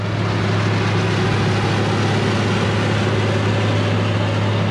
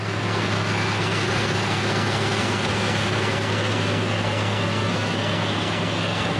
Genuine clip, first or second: first